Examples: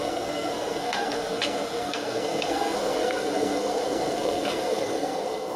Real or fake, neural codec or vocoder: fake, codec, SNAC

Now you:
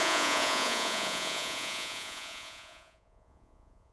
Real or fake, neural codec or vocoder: fake, vocoder, Vocos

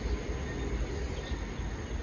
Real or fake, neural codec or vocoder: real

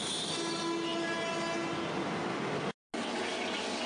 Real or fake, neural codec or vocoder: real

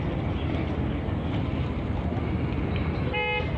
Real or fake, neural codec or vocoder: real